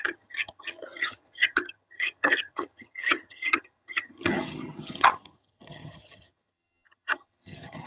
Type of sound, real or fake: fake